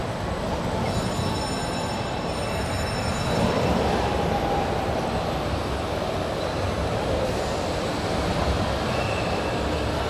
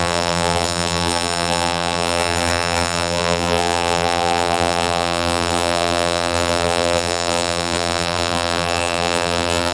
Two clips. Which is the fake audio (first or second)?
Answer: second